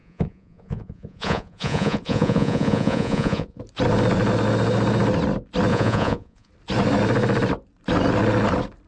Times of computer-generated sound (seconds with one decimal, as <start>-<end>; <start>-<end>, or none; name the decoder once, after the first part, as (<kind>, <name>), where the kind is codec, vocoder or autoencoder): 0.0-3.6 (vocoder, Vocos); 5.7-6.5